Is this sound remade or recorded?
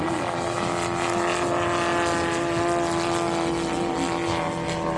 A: recorded